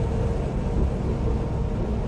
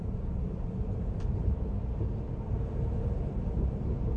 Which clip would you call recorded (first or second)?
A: first